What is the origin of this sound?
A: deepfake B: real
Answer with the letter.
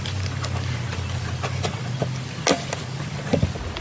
B